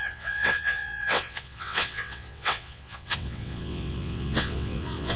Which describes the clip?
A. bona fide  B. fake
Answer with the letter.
B